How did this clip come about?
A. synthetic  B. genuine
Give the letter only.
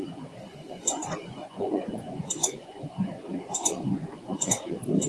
A